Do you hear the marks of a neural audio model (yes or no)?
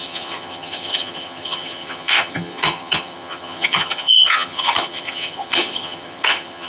yes